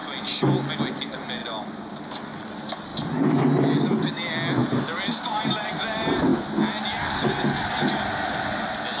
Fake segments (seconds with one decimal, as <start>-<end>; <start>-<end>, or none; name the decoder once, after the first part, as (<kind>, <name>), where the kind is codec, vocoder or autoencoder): none